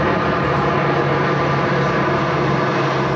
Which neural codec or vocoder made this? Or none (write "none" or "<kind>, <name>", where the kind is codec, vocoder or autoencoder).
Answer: none